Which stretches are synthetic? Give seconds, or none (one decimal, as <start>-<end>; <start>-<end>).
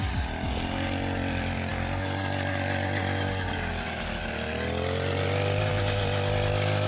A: none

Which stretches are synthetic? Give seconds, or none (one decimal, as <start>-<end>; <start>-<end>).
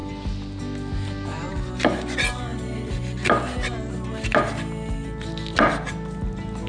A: none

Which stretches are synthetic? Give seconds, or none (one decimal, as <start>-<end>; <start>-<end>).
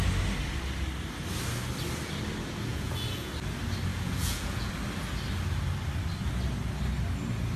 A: 2.7-3.3; 3.9-4.7